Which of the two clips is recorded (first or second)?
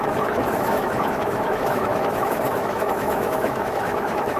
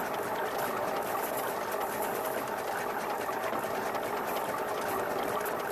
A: second